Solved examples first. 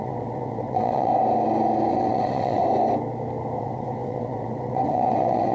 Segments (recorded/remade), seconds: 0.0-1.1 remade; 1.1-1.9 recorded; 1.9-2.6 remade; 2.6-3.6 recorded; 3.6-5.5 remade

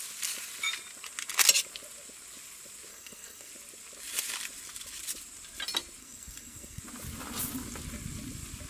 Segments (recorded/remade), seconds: 0.0-2.9 recorded; 2.9-3.5 remade; 3.5-6.0 recorded; 6.0-6.8 remade; 6.8-8.7 recorded